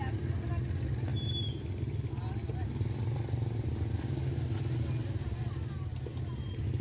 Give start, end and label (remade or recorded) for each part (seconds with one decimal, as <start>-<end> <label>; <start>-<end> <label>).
0.0-6.8 recorded